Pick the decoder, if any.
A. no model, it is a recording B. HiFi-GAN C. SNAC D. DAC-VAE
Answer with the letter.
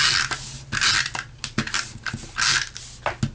A